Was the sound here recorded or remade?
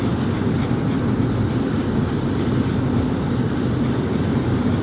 recorded